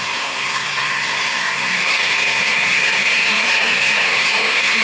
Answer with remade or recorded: remade